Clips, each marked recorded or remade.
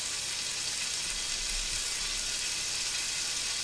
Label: recorded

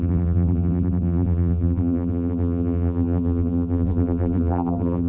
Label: remade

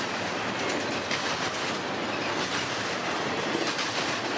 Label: recorded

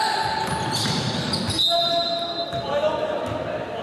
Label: recorded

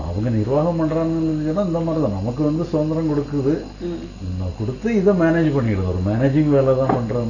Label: recorded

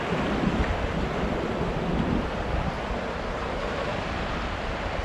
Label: recorded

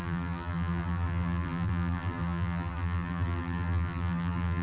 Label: remade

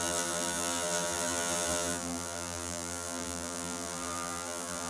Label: remade